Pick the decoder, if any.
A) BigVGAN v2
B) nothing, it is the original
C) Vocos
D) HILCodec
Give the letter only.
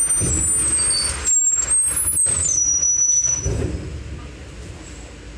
B